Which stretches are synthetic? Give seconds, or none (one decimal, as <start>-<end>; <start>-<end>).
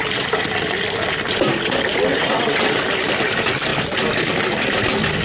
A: 2.1-2.8